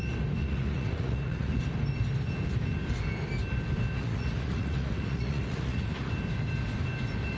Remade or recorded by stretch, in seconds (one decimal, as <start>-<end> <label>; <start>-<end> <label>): 0.0-0.4 recorded; 0.4-1.6 remade; 1.6-4.0 recorded; 4.0-6.1 remade; 6.1-7.4 recorded